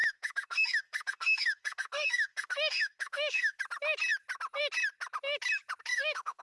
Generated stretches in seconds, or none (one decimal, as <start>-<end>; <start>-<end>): 0.0-3.6; 5.9-6.4